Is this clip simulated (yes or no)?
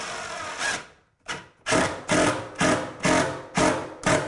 no